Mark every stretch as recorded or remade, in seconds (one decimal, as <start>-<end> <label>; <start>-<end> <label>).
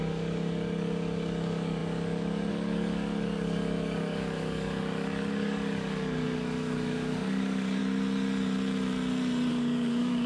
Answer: 0.0-7.8 remade; 7.8-9.5 recorded; 9.5-10.3 remade